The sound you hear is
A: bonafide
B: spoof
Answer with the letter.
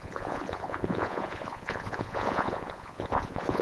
B